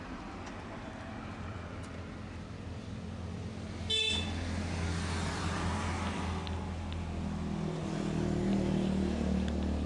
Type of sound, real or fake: real